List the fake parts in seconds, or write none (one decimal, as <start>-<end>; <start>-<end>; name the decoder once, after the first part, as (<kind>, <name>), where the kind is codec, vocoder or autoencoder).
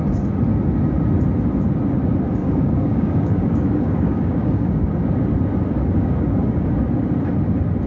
2.4-4.9 (codec, DAC); 5.8-6.7